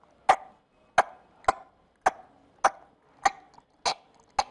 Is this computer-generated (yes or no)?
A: no